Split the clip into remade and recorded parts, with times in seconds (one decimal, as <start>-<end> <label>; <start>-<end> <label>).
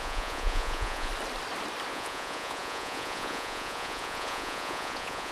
0.0-1.1 remade; 1.1-1.9 recorded; 1.9-5.3 remade